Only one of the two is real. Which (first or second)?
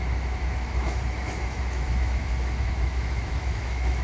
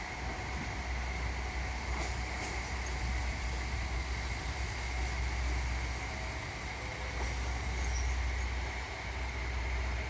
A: second